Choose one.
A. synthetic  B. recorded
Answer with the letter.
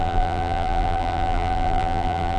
A